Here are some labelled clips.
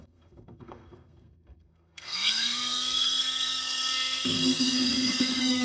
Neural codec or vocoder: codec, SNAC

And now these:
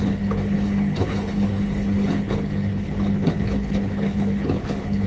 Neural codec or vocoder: codec, HILCodec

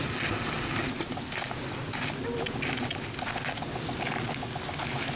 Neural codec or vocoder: none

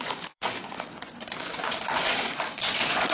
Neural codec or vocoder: vocoder, Vocos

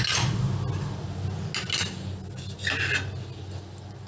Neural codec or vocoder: none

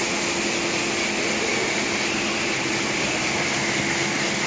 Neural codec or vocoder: none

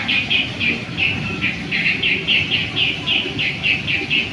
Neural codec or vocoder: none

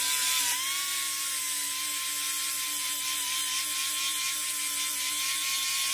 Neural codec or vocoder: none